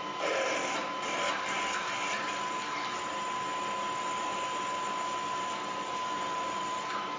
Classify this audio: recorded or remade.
recorded